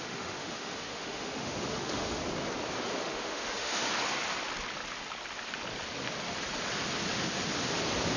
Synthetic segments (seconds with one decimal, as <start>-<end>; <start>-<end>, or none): 0.0-2.2; 3.0-3.9